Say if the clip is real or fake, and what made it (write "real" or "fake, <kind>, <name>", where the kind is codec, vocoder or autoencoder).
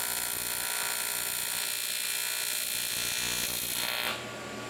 real